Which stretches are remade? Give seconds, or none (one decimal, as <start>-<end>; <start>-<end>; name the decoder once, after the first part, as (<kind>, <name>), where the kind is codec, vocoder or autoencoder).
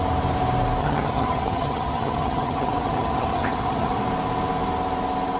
0.8-4.0 (vocoder, HiFi-GAN)